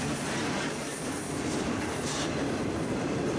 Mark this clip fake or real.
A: fake